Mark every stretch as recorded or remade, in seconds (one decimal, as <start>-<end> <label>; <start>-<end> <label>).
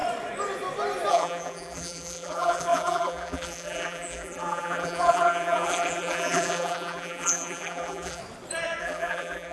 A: 0.0-1.1 recorded; 1.1-8.2 remade; 8.2-8.8 recorded; 8.8-9.5 remade